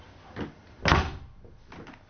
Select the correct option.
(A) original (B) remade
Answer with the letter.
A